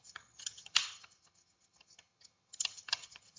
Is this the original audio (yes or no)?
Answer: no